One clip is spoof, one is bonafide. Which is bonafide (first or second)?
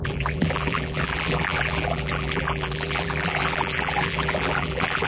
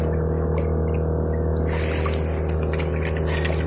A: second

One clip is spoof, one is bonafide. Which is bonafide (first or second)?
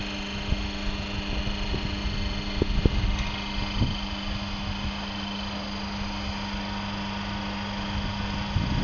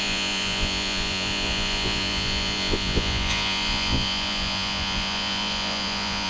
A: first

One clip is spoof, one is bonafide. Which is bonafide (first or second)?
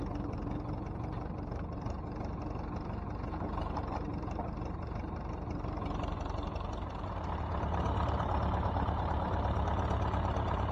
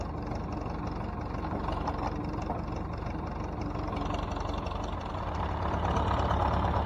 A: second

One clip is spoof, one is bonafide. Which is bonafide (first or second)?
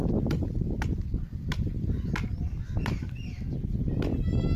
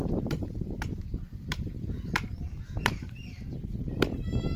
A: first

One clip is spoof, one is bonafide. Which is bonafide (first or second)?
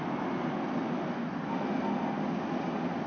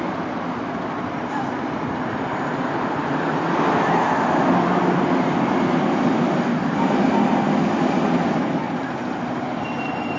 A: first